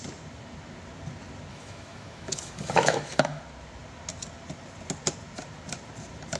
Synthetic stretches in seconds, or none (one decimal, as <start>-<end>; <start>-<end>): 1.5-3.4

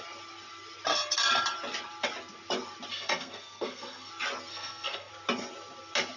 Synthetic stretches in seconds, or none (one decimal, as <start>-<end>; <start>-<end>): 2.9-4.1; 4.5-5.1

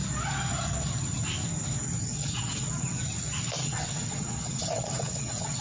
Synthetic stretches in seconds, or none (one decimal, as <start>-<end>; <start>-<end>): 2.1-3.0; 3.6-5.6

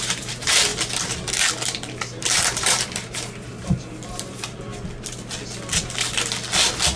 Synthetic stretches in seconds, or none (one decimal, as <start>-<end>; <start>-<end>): 0.0-0.7; 1.5-4.7

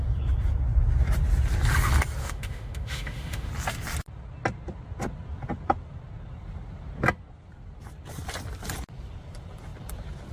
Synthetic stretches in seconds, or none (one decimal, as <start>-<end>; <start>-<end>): 2.2-3.5

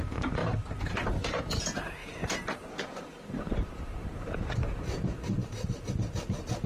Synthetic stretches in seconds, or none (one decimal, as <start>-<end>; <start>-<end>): 0.4-1.4; 2.0-5.9

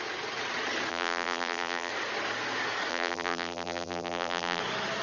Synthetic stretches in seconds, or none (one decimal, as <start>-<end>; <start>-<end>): 0.9-1.9; 2.9-4.6

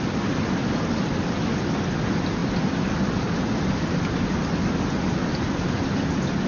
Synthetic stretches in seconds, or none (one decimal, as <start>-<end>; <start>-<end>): none